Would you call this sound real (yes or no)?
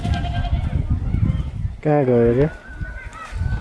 yes